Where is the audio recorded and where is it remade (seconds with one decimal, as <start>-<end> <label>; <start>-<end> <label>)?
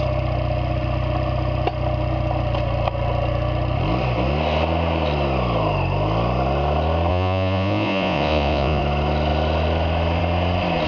0.0-7.1 recorded; 7.1-8.8 remade; 8.8-10.9 recorded